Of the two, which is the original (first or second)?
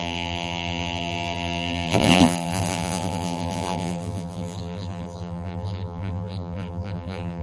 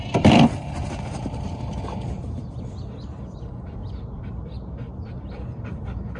second